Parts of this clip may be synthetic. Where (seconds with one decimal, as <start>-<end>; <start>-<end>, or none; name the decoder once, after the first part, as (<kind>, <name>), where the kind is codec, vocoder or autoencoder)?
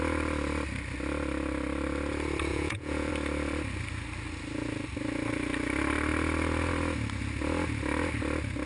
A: 2.5-3.1 (vocoder, Vocos)